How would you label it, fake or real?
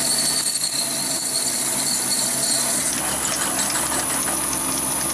real